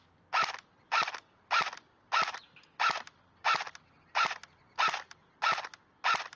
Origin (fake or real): real